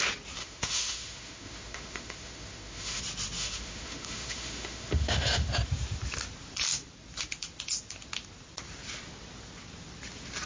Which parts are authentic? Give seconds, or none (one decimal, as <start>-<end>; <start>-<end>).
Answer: 0.0-0.4; 3.0-3.4; 5.5-10.5

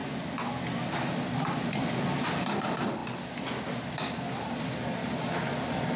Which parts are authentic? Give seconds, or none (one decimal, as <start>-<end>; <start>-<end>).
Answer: 0.0-6.0